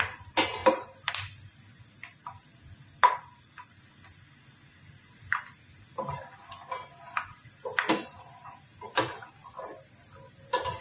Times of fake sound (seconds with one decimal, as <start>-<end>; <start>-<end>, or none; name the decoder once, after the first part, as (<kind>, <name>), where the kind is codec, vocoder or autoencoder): 0.6-1.1 (vocoder, BigVGAN v2)